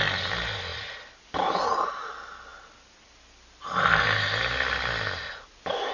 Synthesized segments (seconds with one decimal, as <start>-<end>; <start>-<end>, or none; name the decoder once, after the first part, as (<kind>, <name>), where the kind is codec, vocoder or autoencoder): none